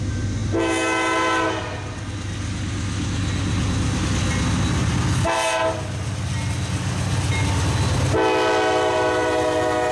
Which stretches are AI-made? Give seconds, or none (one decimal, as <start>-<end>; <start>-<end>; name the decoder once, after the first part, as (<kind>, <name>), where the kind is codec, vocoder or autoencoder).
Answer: none